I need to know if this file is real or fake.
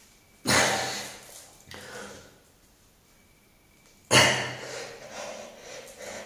real